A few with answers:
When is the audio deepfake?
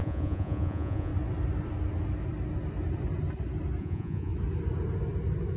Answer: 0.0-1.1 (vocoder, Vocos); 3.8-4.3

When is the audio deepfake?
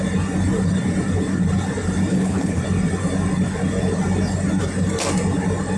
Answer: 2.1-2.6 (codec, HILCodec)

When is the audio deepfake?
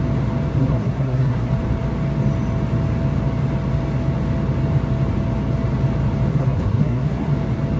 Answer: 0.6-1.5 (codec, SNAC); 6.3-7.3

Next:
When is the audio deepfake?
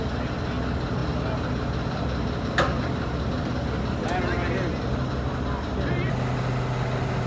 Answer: none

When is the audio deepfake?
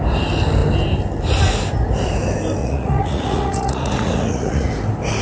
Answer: 2.6-4.7 (vocoder, Vocos)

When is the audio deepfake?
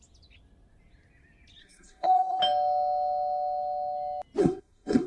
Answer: 1.6-2.4 (codec, SNAC); 4.4-5.1